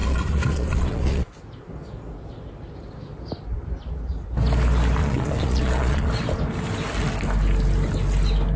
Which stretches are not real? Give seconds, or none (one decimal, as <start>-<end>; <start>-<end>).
0.0-1.3; 5.0-6.1